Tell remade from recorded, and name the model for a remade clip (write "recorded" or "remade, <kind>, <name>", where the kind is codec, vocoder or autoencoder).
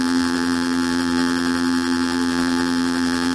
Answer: remade, vocoder, BigVGAN v2